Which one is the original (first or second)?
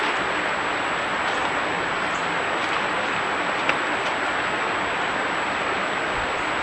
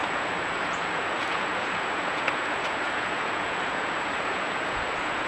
first